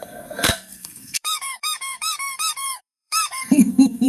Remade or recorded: remade